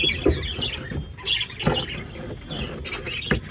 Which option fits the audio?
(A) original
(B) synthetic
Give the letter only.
A